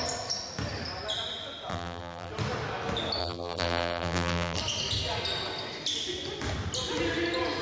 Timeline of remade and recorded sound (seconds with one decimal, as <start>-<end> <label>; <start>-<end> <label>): 0.0-1.7 recorded; 1.7-2.3 remade; 2.3-3.2 recorded; 3.2-4.6 remade; 4.6-7.6 recorded